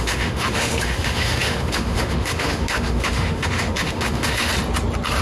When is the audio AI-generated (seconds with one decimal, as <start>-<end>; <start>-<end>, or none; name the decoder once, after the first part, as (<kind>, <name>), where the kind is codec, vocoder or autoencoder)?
0.0-4.5 (autoencoder, DAC-VAE)